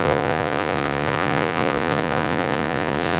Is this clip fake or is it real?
fake